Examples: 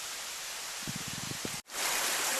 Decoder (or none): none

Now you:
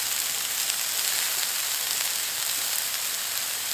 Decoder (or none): none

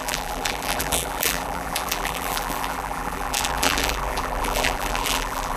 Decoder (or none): vocoder, BigVGAN v2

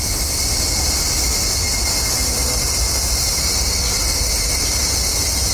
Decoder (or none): none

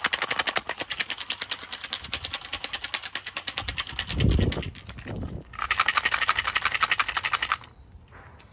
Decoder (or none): none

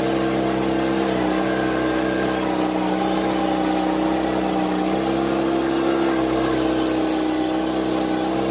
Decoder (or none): none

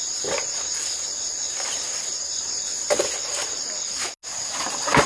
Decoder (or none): none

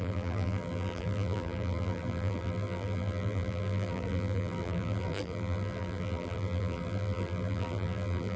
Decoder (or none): vocoder, BigVGAN v2